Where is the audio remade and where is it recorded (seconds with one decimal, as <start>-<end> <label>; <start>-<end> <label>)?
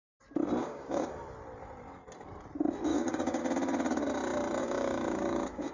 0.0-0.6 recorded; 0.6-1.1 remade; 1.1-2.9 recorded; 2.9-3.4 remade; 3.4-4.6 recorded; 4.6-5.7 remade